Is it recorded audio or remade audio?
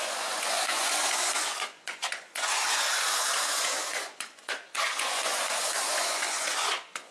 remade